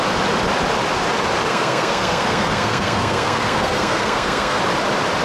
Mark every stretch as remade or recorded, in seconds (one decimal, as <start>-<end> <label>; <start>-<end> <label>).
0.0-1.5 recorded; 1.5-4.6 remade; 4.6-5.2 recorded